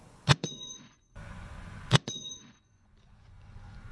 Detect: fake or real fake